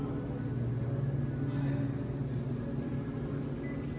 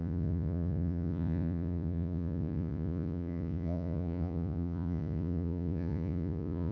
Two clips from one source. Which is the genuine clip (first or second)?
first